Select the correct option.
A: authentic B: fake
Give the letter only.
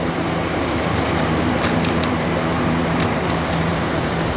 B